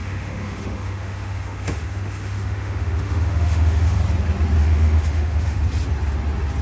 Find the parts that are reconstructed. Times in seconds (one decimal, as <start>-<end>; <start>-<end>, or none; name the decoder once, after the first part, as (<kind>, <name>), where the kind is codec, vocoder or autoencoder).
0.0-4.0 (autoencoder, DAC-VAE); 4.6-5.6